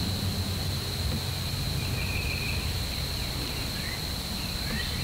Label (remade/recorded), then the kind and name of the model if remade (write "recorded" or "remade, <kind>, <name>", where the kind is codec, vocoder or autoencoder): recorded